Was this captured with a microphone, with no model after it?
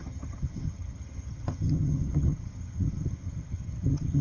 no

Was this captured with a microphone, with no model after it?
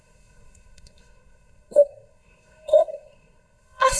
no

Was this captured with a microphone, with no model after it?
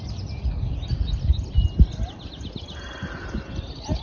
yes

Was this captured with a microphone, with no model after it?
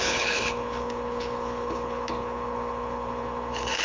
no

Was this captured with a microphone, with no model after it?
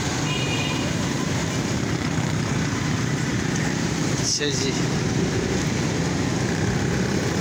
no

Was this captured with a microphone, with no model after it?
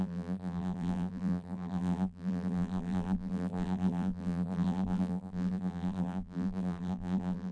no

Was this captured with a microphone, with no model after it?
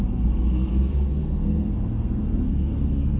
no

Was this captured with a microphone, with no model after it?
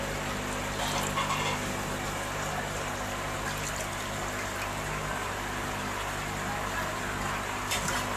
yes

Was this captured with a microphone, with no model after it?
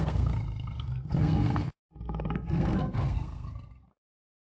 no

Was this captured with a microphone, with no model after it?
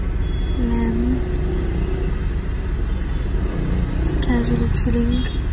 yes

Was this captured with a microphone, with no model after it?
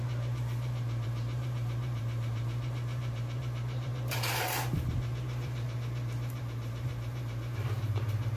no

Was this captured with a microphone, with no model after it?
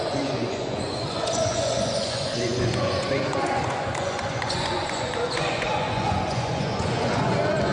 no